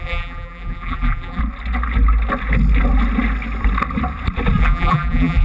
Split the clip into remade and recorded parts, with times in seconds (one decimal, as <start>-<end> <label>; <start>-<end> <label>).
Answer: 0.0-1.4 remade; 1.4-4.6 recorded; 4.6-5.4 remade